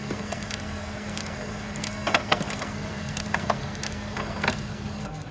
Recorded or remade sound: remade